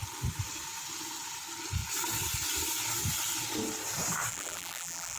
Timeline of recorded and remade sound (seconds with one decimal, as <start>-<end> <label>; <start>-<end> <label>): 0.0-4.3 recorded; 4.3-5.2 remade